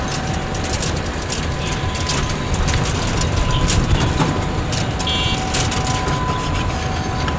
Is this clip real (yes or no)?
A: yes